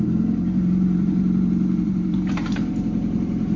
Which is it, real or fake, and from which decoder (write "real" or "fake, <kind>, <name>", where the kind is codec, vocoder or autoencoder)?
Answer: fake, vocoder, BigVGAN v2